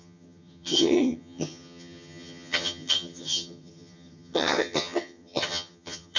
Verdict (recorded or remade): remade